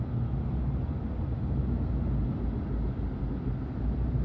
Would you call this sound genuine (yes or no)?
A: yes